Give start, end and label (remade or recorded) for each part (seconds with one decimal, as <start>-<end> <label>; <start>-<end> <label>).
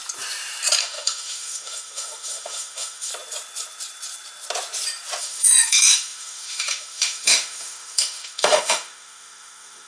0.0-0.8 recorded; 0.8-3.1 remade; 3.1-5.2 recorded; 5.2-9.9 remade